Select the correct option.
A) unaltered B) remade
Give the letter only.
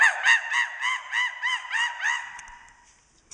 A